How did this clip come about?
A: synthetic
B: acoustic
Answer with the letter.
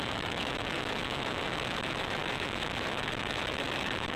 A